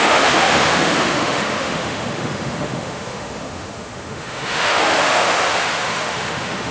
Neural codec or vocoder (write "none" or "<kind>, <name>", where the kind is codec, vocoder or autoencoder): autoencoder, DAC-VAE